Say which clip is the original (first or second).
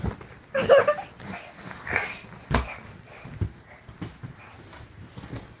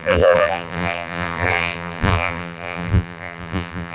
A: first